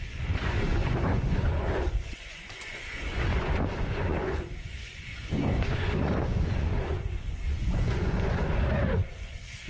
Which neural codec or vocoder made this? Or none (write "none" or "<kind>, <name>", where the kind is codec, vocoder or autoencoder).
vocoder, Vocos